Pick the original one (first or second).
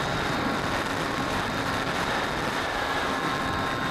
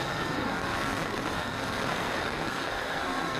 first